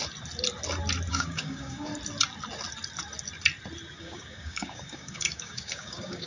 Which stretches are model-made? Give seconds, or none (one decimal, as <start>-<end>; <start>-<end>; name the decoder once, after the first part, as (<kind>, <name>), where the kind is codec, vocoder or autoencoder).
1.1-1.9 (codec, DAC); 4.0-6.3